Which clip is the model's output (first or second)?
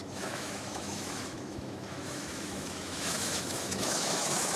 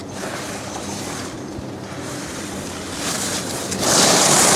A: first